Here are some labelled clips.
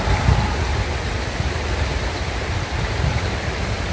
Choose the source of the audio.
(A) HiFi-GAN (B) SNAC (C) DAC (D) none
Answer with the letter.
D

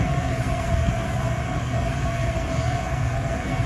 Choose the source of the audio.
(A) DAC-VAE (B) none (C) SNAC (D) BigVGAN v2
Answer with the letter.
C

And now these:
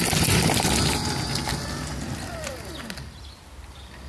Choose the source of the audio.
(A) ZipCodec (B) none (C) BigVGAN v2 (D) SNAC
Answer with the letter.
B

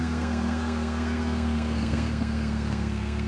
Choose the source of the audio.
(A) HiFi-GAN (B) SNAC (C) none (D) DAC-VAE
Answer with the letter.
B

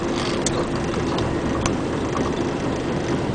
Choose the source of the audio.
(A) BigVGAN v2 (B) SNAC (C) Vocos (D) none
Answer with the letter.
D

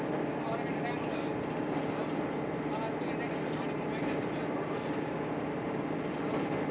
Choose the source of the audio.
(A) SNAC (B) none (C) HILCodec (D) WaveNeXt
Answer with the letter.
B